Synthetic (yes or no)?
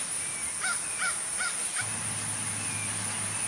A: no